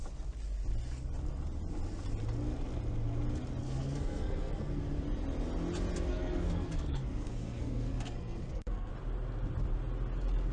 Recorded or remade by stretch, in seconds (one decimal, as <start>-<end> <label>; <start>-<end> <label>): 0.0-3.6 recorded; 3.6-4.8 remade; 4.8-6.1 recorded; 6.1-8.9 remade; 8.9-10.5 recorded